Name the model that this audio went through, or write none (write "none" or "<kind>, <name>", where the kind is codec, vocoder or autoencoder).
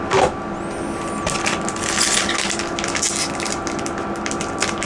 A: none